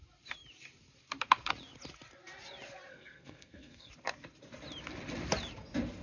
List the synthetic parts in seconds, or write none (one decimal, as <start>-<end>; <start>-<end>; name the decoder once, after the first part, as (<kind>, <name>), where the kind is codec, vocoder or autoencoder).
2.9-3.9 (codec, SNAC)